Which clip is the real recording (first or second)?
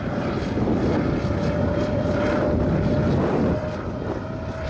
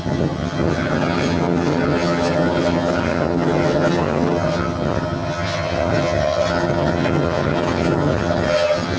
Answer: first